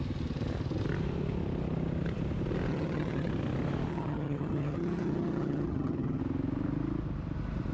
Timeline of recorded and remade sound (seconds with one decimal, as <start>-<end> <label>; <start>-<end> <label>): 0.0-2.7 recorded; 2.7-3.3 remade; 3.3-3.9 recorded; 3.9-6.2 remade; 6.2-7.7 recorded